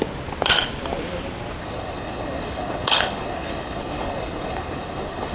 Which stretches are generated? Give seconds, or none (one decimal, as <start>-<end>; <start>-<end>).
1.6-5.3